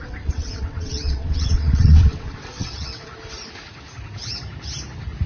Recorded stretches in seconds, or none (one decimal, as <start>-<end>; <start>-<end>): 3.1-5.3